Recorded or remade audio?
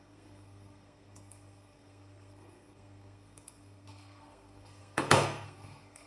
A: remade